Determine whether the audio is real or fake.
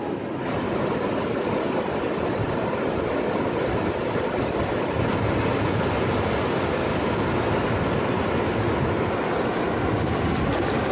real